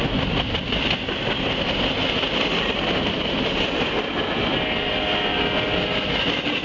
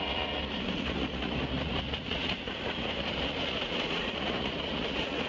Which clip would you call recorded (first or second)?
first